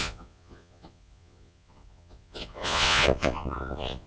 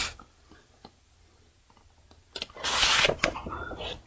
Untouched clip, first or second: second